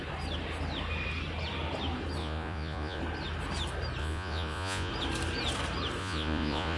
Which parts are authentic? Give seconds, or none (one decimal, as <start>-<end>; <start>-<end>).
0.0-2.2; 3.0-4.0; 4.9-6.0